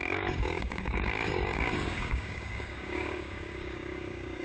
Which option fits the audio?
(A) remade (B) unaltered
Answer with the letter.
A